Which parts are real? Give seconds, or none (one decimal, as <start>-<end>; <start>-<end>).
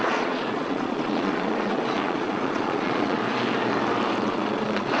3.2-4.2